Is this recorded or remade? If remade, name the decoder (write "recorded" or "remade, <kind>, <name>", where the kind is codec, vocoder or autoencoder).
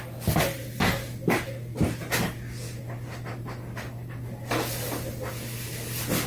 recorded